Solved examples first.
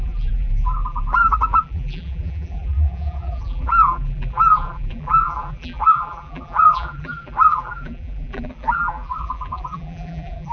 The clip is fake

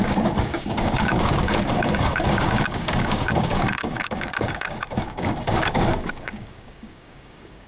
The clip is fake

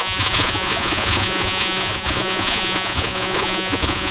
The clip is fake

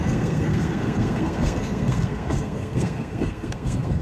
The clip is fake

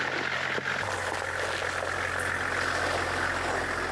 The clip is real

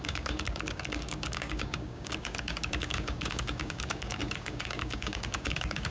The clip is fake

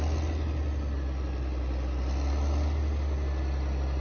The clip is real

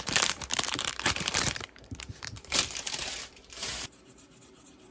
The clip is fake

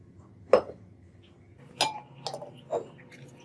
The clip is real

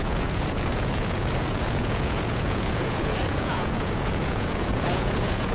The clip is fake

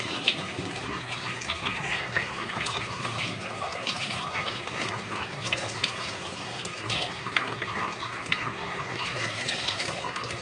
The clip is fake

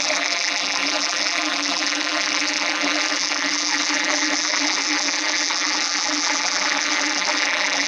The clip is fake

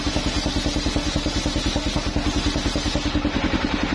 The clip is real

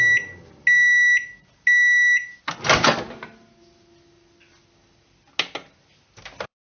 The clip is real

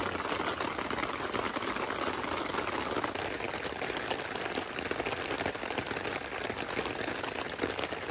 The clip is real